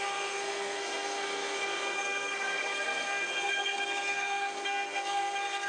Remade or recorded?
remade